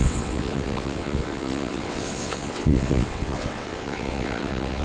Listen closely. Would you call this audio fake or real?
fake